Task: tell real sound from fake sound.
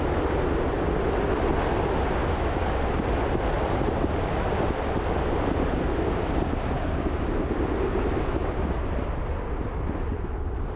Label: real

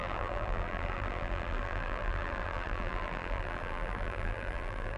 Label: fake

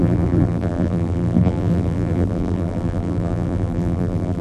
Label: fake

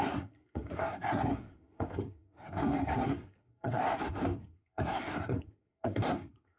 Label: fake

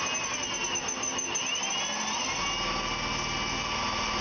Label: real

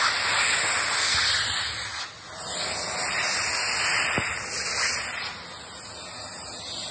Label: real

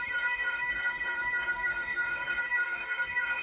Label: fake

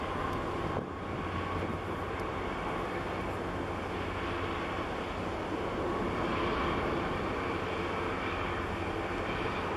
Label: real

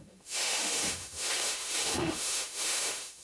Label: fake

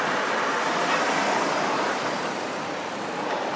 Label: real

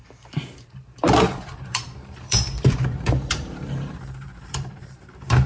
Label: fake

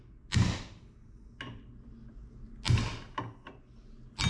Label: real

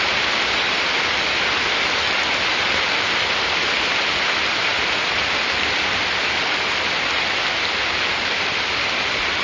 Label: real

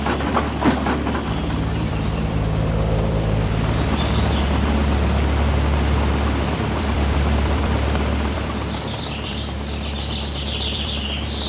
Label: fake